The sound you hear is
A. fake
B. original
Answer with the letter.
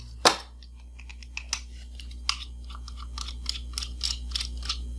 B